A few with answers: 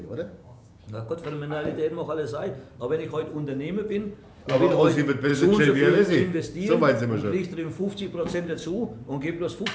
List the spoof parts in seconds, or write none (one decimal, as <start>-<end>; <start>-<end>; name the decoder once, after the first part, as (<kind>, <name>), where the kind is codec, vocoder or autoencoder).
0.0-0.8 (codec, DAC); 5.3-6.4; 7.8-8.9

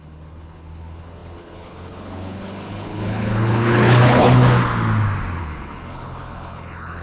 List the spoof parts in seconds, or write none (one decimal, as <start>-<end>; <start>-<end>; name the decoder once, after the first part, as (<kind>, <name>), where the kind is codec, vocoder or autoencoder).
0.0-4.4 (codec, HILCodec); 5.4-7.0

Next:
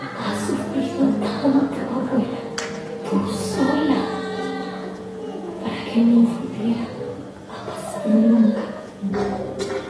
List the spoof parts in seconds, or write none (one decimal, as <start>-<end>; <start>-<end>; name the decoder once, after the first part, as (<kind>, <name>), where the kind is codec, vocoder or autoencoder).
1.7-2.5 (vocoder, Vocos); 3.3-5.9; 8.1-9.1

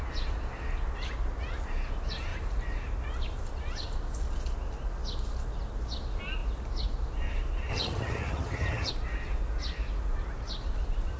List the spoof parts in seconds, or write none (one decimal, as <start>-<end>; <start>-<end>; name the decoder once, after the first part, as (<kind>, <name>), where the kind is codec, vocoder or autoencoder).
7.7-8.9 (vocoder, HiFi-GAN)

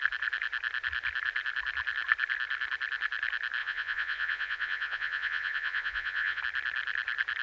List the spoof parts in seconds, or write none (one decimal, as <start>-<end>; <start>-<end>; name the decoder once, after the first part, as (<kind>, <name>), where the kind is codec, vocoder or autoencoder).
3.6-6.4 (vocoder, Vocos)

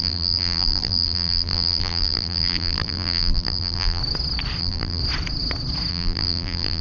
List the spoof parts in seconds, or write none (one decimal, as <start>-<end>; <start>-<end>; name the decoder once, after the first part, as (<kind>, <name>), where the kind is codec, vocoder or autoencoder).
0.0-4.0 (vocoder, BigVGAN v2); 4.6-5.0; 5.9-6.8